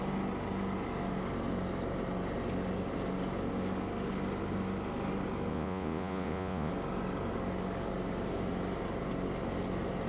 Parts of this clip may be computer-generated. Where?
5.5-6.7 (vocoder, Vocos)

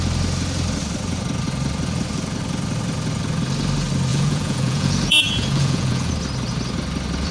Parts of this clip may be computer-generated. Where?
4.1-6.1 (vocoder, Vocos)